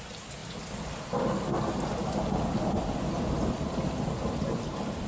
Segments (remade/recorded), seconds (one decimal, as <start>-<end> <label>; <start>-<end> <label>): 0.0-5.1 recorded